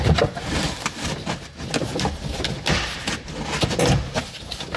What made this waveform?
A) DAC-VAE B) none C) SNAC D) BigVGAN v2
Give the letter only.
B